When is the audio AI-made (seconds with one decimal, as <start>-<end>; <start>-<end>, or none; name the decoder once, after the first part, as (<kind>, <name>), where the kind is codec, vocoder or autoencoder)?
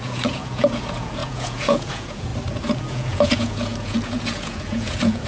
0.0-2.3 (vocoder, Vocos); 2.8-5.3